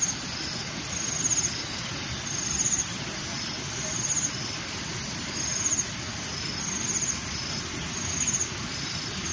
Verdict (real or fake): real